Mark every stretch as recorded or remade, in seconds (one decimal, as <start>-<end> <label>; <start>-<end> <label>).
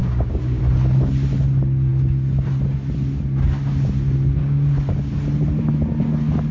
0.0-0.6 remade; 0.6-4.4 recorded; 4.4-5.1 remade; 5.1-6.5 recorded